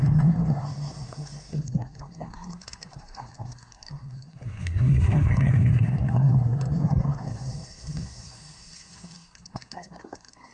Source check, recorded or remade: remade